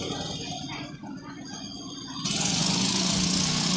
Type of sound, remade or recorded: remade